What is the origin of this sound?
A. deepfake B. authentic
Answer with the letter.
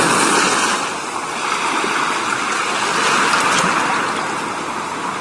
B